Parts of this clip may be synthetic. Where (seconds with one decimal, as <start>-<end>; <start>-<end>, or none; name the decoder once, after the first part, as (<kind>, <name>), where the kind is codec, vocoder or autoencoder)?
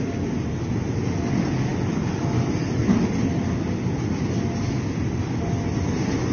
none